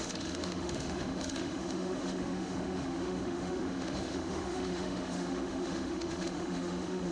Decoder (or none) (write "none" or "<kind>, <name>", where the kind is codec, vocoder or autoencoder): autoencoder, DAC-VAE